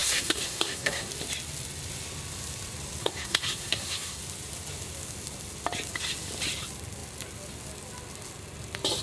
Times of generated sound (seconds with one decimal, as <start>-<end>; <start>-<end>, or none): 0.0-1.1; 3.0-4.2